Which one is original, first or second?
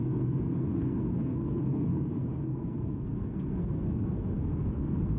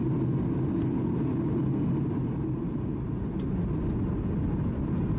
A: second